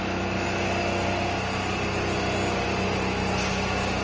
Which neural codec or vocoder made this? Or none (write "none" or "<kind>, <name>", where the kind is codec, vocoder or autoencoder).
none